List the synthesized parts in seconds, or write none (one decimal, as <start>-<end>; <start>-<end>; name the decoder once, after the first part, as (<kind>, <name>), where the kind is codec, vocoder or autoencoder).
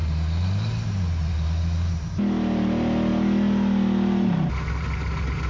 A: none